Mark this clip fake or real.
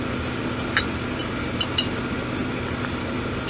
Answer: real